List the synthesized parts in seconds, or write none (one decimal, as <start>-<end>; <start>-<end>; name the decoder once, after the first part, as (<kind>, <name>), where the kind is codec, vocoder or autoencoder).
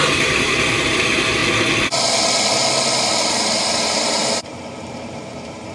0.0-1.4 (vocoder, BigVGAN v2); 3.3-5.7